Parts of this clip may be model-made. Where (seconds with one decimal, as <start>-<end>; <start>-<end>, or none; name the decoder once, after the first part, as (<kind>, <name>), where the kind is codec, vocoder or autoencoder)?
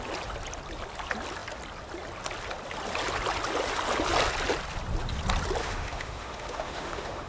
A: 5.6-7.3 (autoencoder, DAC-VAE)